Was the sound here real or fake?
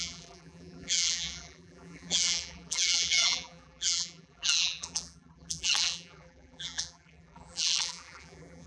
fake